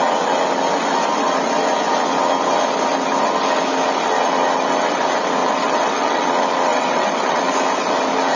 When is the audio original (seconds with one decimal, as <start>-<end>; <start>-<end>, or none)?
0.0-5.4; 6.2-6.7; 7.4-8.4